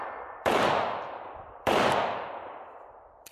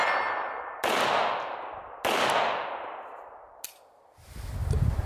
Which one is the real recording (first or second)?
second